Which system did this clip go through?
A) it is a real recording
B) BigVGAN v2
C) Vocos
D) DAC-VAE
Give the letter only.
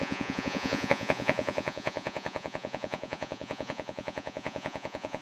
C